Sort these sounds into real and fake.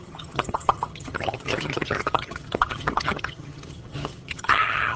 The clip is fake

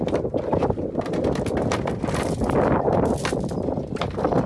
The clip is real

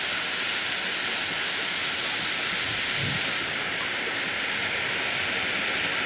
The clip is real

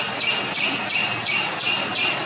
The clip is real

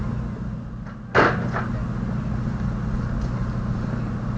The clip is real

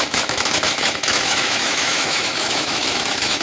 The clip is fake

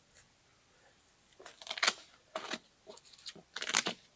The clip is real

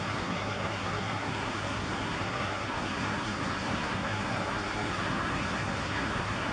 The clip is fake